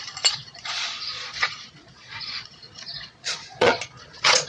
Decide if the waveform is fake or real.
fake